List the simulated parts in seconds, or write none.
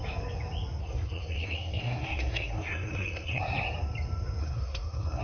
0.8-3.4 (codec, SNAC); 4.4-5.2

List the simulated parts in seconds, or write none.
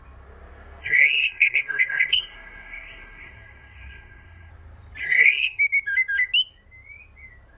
0.8-4.5 (codec, SNAC); 5.0-5.6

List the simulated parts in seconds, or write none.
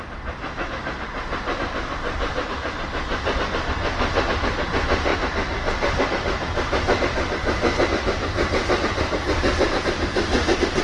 none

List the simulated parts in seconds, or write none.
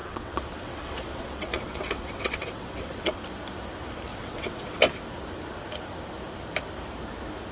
0.0-3.2 (vocoder, WaveNeXt); 4.1-4.8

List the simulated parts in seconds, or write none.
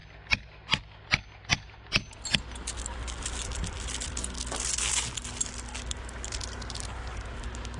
none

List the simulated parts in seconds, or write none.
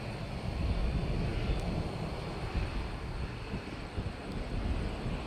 none